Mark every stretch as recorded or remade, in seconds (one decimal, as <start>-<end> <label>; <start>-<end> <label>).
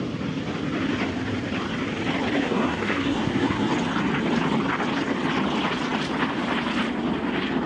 0.0-2.4 recorded; 2.4-3.7 remade; 3.7-7.7 recorded